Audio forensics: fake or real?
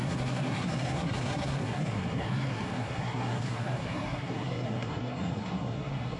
fake